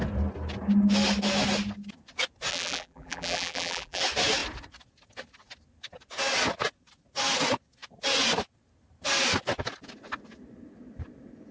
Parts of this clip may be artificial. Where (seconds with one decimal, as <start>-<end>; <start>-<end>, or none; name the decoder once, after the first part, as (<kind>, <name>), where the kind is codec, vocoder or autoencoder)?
2.5-4.0 (vocoder, BigVGAN v2)